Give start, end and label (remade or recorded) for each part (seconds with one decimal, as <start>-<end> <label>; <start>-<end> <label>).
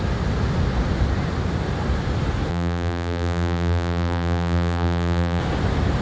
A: 0.0-2.5 recorded; 2.5-5.4 remade; 5.4-6.0 recorded